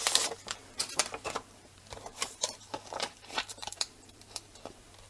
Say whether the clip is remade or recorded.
remade